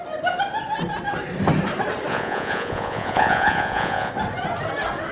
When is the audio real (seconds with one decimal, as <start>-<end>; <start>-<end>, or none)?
0.0-2.1; 4.1-5.1